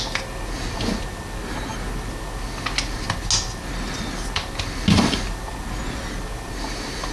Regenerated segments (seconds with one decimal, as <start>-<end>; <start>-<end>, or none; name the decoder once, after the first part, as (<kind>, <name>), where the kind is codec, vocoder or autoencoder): none